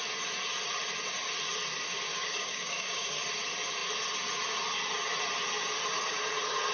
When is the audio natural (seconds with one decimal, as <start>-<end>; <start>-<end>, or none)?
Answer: 0.0-2.1; 3.2-6.7